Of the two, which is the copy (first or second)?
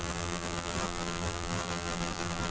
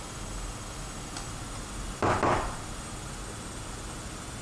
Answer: first